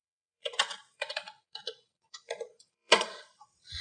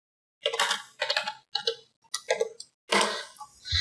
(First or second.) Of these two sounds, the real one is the second